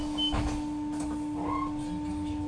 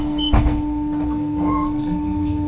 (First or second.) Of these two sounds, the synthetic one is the second